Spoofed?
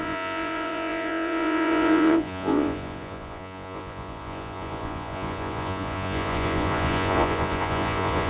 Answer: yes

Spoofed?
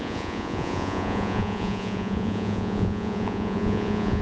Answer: yes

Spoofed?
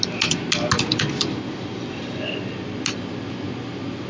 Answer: no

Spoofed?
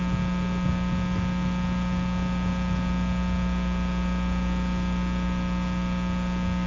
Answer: no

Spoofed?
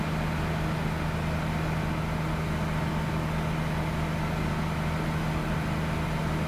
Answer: no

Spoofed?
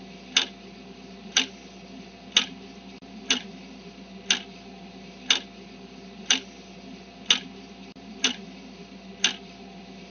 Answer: no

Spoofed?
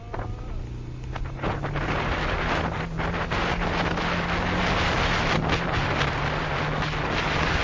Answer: no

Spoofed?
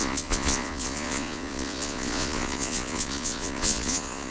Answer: yes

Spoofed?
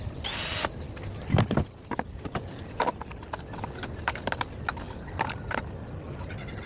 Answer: no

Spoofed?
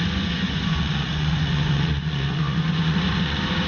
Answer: yes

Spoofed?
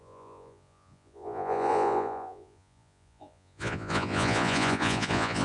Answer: yes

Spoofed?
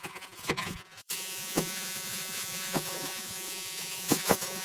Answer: yes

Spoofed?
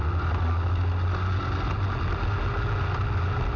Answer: no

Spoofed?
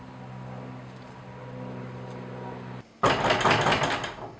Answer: no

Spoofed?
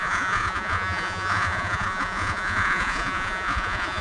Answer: yes